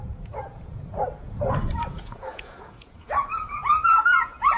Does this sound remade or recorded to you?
remade